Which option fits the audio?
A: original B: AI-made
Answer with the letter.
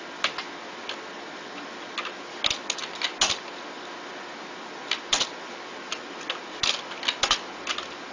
A